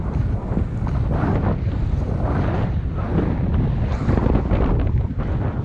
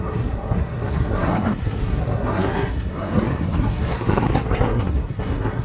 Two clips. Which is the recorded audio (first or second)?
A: first